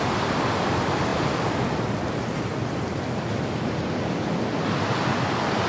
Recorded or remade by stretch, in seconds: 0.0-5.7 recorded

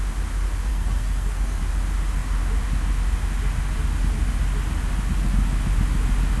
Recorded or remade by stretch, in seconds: 0.0-0.7 recorded; 0.7-1.6 remade; 1.6-6.4 recorded

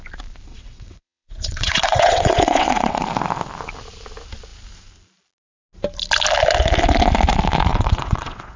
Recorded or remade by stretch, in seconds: 0.0-0.5 recorded; 0.5-3.0 remade; 3.0-7.7 recorded; 7.7-8.6 remade

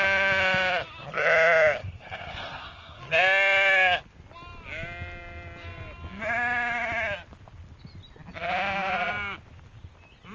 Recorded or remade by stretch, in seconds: 0.0-1.8 recorded; 1.8-3.0 remade; 3.0-10.3 recorded

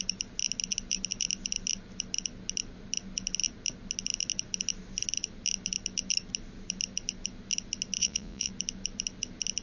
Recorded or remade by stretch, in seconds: 0.0-8.0 recorded; 8.0-8.5 remade; 8.5-9.6 recorded

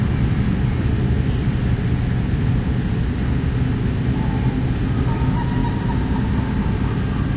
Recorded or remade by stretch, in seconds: 0.0-7.4 recorded